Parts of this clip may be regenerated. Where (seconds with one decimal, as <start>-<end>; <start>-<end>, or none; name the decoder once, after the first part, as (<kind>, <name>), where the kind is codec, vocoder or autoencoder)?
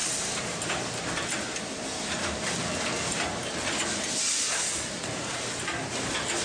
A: none